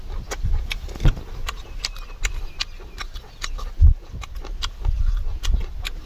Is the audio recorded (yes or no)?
yes